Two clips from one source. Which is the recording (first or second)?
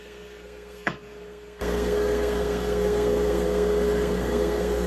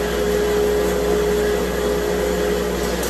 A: second